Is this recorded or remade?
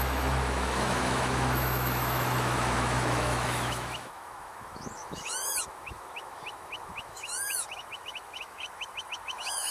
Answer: remade